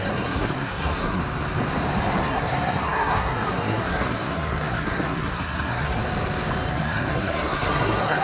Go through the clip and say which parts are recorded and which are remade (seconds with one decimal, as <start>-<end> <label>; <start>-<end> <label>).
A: 0.0-1.2 remade; 1.2-2.2 recorded; 2.2-6.0 remade; 6.0-6.7 recorded; 6.7-8.2 remade